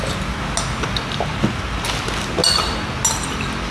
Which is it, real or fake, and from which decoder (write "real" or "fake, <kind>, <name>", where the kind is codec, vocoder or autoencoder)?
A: real